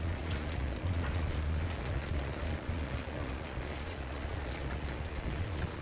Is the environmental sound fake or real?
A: fake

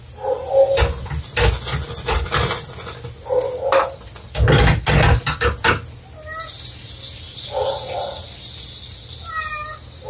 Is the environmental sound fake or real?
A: real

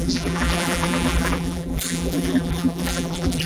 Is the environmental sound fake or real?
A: fake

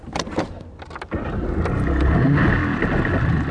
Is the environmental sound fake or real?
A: real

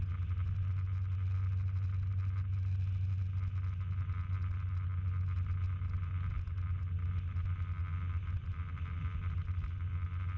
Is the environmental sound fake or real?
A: real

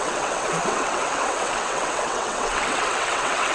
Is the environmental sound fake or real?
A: fake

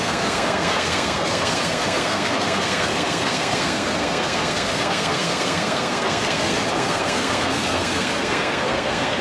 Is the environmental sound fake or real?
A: fake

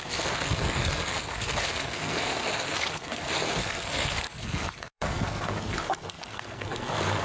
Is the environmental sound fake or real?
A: fake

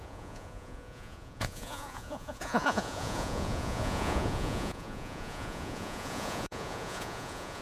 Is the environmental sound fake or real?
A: fake